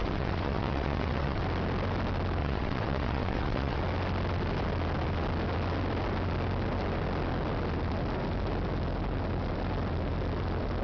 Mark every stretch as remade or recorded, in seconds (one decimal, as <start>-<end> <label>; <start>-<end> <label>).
0.0-1.4 remade; 1.4-2.4 recorded; 2.4-3.8 remade; 3.8-10.8 recorded